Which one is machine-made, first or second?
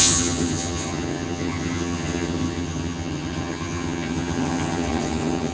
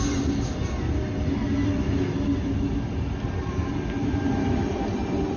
first